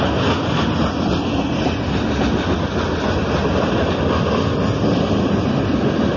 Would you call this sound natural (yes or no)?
yes